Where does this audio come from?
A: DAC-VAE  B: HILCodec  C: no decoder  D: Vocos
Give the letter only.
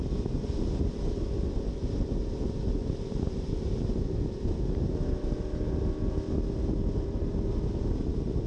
C